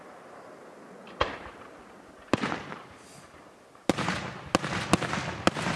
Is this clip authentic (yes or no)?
yes